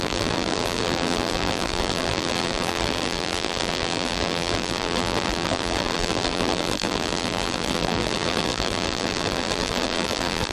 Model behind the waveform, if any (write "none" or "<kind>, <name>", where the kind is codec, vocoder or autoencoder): vocoder, BigVGAN v2